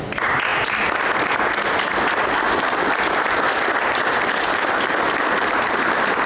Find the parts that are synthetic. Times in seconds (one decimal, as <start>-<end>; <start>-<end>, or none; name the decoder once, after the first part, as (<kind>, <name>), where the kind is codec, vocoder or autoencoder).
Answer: none